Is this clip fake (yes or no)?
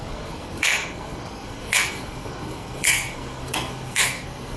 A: yes